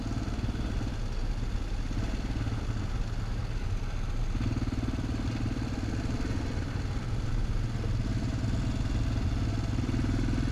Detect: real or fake real